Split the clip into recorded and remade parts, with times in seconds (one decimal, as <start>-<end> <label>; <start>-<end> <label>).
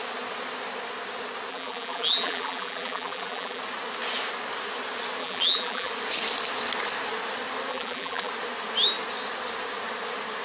0.0-1.5 recorded; 1.5-3.6 remade; 3.6-5.2 recorded; 5.2-5.9 remade; 5.9-7.7 recorded; 7.7-8.3 remade; 8.3-10.4 recorded